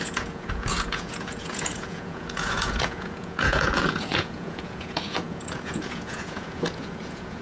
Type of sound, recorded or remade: remade